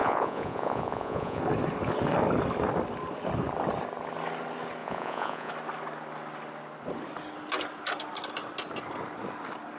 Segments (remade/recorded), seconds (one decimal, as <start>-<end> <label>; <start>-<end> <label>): 0.0-1.4 remade; 1.4-4.8 recorded; 4.8-5.5 remade; 5.5-9.8 recorded